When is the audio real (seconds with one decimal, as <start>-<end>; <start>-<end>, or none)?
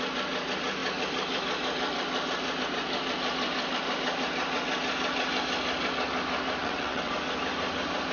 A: 0.0-6.6; 7.1-8.1